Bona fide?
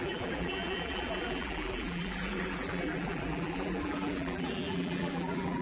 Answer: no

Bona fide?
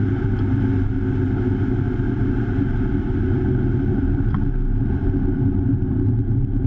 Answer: yes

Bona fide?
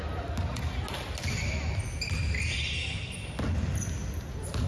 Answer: yes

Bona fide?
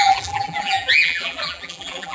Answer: no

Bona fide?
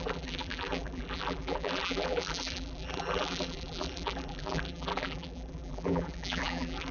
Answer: no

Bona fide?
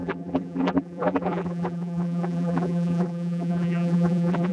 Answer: no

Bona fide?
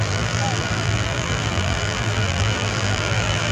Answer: no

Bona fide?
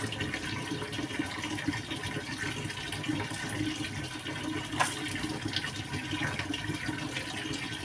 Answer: yes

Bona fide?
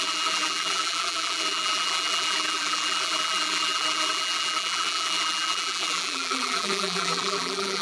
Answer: no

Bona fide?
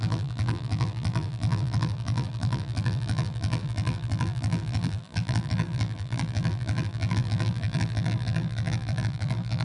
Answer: no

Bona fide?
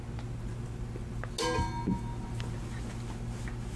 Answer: yes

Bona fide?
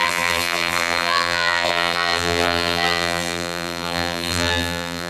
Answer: no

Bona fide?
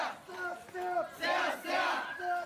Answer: yes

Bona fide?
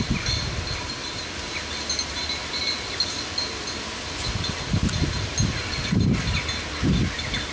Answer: yes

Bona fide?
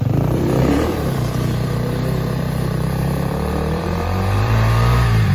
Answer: no